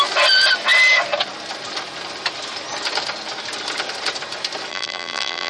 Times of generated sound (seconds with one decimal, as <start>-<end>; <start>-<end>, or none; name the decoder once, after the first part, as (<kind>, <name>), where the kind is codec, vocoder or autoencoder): 4.7-5.5 (vocoder, BigVGAN v2)